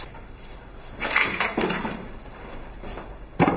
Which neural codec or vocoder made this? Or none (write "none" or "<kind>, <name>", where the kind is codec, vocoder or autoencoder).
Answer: none